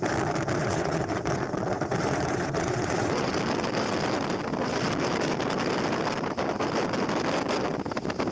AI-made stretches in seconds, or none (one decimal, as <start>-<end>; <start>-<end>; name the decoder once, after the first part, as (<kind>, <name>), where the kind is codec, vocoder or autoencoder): 0.6-3.3 (vocoder, WaveNeXt)